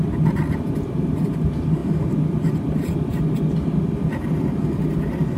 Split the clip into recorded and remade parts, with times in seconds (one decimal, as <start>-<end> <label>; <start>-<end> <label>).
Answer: 0.0-5.4 recorded